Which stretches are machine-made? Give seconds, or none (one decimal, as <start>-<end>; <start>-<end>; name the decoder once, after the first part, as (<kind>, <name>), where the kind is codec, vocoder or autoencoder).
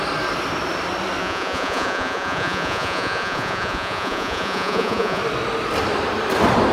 1.2-5.2 (vocoder, Vocos)